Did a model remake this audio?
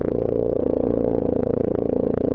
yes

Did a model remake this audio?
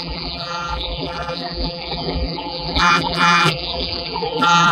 yes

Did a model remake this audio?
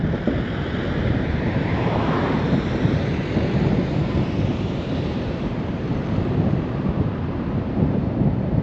yes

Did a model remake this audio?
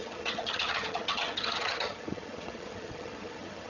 yes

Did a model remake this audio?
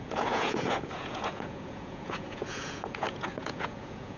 yes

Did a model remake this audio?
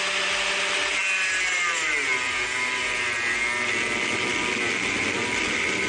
no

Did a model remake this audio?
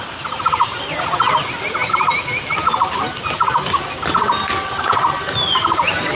no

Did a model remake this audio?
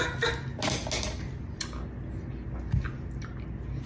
no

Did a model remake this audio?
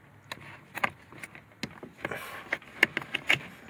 no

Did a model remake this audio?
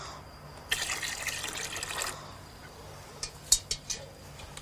no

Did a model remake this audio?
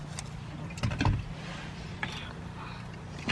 no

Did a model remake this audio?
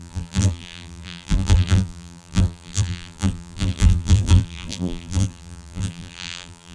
yes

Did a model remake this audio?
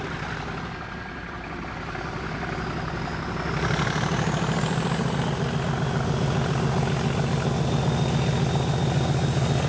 no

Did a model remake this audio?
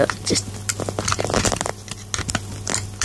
no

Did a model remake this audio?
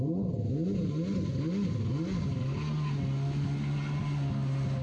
no